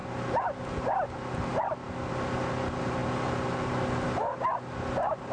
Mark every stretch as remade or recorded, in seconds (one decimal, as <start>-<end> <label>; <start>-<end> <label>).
0.0-0.6 remade; 0.6-5.3 recorded